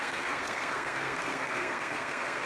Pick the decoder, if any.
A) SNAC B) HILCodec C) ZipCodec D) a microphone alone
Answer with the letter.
A